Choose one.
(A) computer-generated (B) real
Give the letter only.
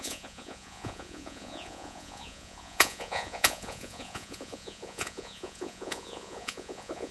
A